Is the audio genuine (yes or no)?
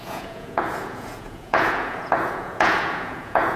no